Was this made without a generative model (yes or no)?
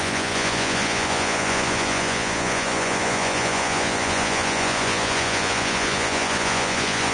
no